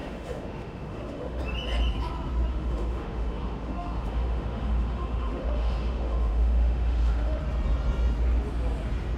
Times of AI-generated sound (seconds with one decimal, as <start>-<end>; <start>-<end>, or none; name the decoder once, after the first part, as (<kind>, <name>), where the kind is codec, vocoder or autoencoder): 0.0-1.4 (autoencoder, DAC-VAE); 2.5-7.4

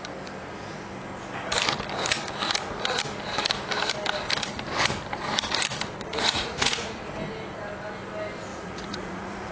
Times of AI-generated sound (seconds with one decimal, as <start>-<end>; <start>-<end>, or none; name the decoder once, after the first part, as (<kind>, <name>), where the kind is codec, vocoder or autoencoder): 6.1-7.1 (vocoder, Vocos); 8.5-9.5